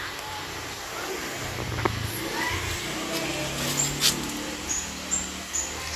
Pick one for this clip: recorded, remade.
recorded